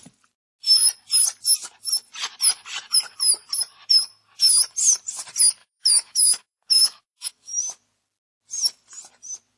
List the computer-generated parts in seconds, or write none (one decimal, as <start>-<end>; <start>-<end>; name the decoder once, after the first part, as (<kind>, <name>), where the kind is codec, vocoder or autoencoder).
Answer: 5.6-7.6 (autoencoder, DAC-VAE)